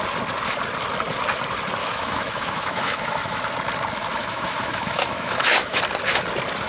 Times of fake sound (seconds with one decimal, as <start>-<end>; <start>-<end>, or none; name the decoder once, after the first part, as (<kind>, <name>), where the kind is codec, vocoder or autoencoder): 1.8-3.4 (autoencoder, DAC-VAE); 4.2-5.8